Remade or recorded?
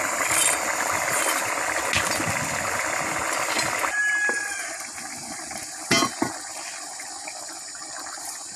recorded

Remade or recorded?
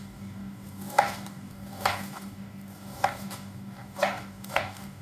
remade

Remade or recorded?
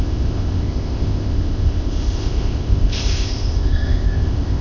remade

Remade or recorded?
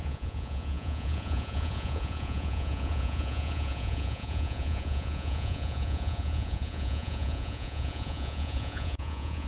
remade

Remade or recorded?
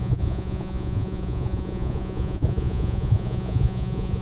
remade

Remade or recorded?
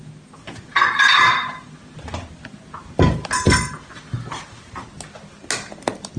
recorded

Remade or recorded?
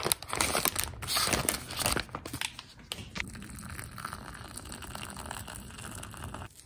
recorded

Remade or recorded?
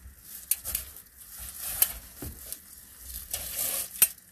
recorded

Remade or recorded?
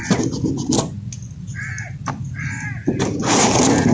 recorded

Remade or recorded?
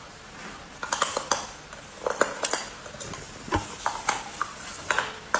recorded